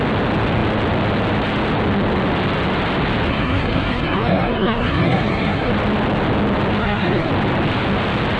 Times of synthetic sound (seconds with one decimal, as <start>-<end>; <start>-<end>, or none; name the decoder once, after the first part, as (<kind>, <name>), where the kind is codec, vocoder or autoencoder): 3.3-5.7 (codec, SNAC); 6.8-7.3